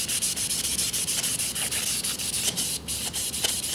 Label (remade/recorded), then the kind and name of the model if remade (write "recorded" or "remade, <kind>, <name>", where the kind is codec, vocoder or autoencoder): recorded